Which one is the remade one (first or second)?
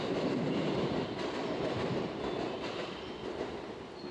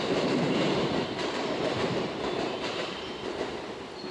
second